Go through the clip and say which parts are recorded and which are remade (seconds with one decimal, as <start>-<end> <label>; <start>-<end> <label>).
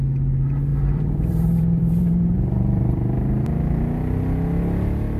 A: 0.0-0.7 recorded; 0.7-3.8 remade; 3.8-5.2 recorded